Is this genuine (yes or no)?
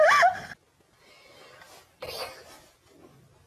yes